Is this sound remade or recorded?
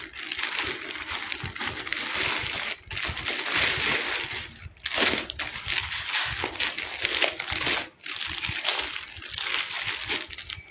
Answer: recorded